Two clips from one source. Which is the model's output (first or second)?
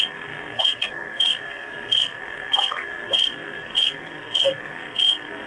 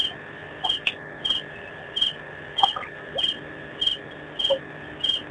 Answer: first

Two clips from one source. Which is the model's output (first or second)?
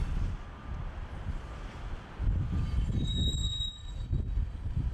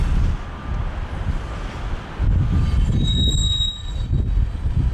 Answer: first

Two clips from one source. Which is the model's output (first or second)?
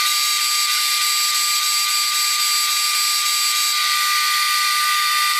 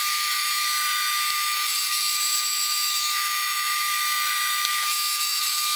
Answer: second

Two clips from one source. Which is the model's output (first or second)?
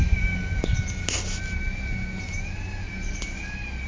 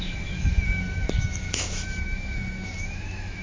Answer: second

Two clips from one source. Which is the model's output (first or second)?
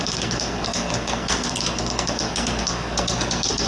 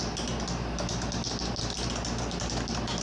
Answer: first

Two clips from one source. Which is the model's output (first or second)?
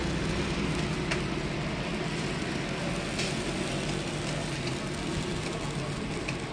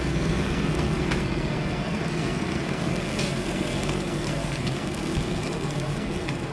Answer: second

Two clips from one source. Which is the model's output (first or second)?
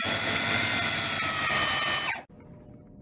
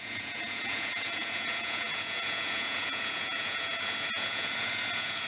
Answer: second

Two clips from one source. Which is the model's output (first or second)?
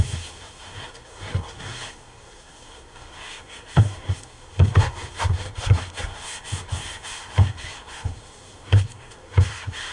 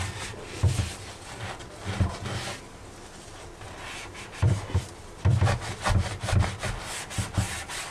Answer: first